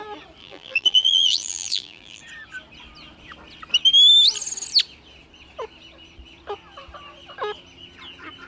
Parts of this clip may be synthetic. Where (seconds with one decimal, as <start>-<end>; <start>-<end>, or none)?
0.4-2.2